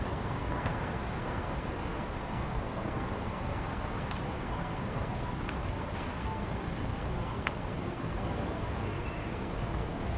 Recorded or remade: remade